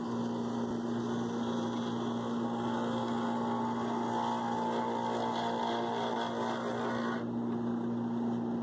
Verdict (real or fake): real